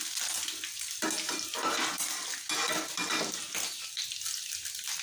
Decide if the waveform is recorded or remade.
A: recorded